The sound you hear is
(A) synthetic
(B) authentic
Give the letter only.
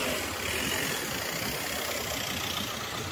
B